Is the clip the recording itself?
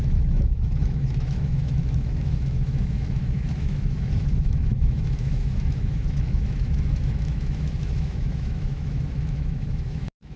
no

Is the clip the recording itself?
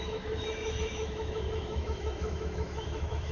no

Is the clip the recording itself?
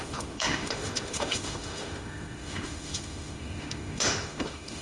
no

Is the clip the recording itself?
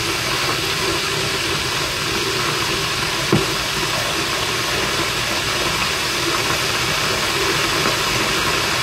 yes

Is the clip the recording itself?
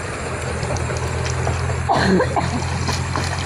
yes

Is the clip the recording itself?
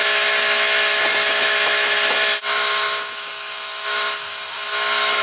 no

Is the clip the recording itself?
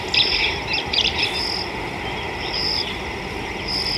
yes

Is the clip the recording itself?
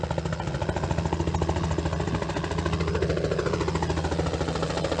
yes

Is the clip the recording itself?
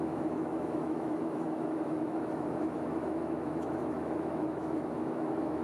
no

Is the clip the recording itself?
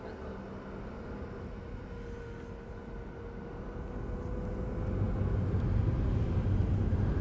yes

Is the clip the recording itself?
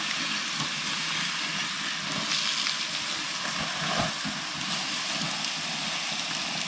yes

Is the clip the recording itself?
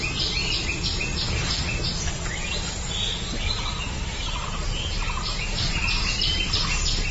yes